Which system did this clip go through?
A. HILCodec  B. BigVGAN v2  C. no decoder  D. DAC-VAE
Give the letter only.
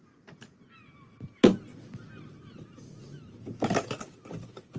C